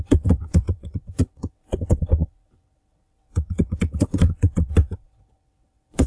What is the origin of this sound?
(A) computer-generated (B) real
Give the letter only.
A